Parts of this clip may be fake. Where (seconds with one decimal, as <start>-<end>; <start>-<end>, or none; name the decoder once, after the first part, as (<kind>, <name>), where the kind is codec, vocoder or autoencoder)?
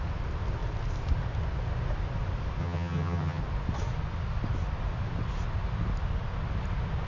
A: 2.6-3.4 (vocoder, HiFi-GAN)